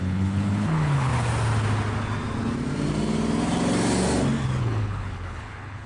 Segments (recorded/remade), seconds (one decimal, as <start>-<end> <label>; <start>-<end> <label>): 0.0-1.1 remade; 1.1-4.6 recorded; 4.6-5.9 remade